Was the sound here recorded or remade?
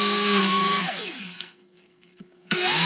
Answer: remade